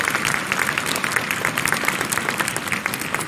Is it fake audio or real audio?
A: real